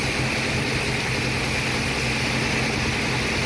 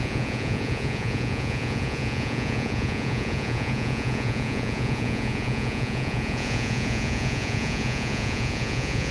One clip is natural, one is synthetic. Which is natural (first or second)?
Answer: first